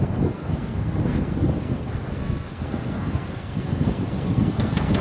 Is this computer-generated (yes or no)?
yes